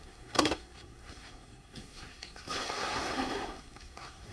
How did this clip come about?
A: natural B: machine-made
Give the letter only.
B